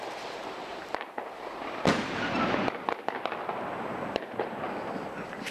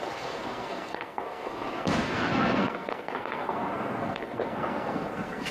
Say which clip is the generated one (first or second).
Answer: second